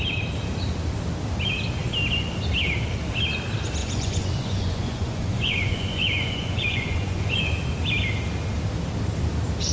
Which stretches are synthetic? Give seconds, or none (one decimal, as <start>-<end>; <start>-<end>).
3.8-7.4